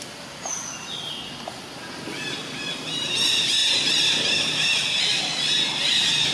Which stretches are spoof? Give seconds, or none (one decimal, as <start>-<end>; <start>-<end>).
none

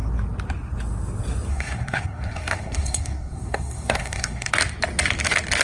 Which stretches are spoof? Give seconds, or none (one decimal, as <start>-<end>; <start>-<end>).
1.5-4.5

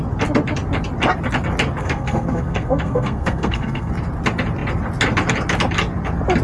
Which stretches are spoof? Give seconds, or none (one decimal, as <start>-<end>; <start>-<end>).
1.8-3.9

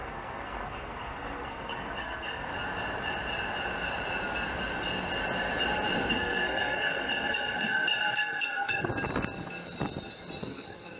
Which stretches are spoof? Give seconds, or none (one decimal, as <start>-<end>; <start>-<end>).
0.0-2.5; 6.1-8.9; 10.4-11.0

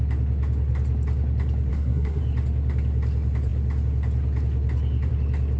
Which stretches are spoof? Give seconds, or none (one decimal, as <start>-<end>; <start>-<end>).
1.7-2.2

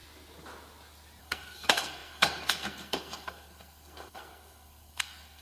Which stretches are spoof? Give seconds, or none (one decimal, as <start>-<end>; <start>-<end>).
1.2-5.4

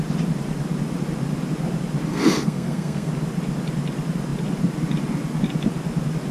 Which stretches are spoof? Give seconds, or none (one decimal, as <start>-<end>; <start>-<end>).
2.1-3.1